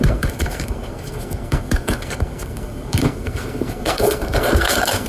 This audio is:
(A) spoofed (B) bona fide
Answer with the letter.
A